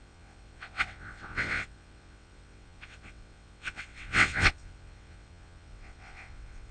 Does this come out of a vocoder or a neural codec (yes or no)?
yes